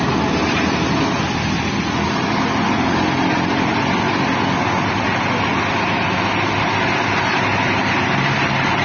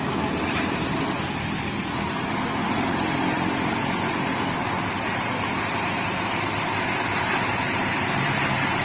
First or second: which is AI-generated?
second